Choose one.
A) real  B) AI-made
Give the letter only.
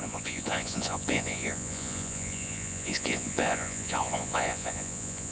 B